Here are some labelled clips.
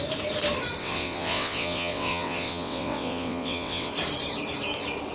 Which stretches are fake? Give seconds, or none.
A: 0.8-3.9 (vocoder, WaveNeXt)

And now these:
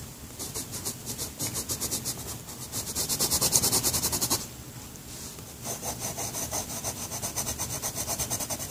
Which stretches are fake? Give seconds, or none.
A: 0.0-1.5 (vocoder, BigVGAN v2); 2.4-8.7

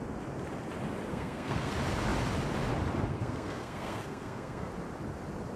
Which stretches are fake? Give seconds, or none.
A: 1.1-1.7 (codec, SNAC); 3.1-4.7

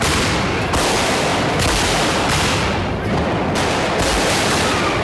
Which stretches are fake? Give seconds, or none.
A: none

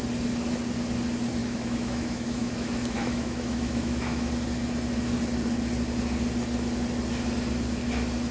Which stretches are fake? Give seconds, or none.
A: 1.4-4.3 (autoencoder, DAC-VAE)

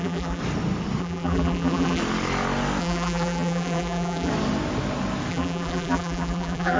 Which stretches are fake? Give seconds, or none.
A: 0.0-0.4 (vocoder, BigVGAN v2); 1.0-2.0; 2.8-4.3; 5.3-6.8